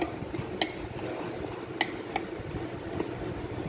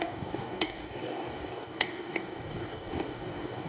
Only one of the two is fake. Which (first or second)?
second